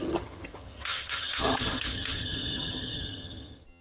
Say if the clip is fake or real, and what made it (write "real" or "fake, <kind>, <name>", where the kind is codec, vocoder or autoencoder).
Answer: fake, vocoder, HiFi-GAN